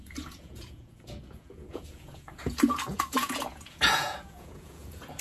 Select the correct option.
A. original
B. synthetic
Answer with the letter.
B